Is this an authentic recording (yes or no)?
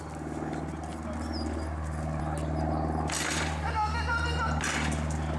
yes